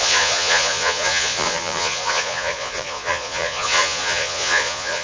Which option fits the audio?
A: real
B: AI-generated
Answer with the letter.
B